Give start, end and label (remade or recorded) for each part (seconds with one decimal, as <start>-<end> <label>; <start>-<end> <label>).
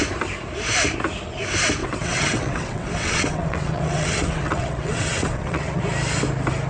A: 0.0-1.8 recorded; 1.8-5.8 remade; 5.8-6.7 recorded